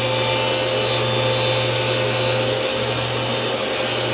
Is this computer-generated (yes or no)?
no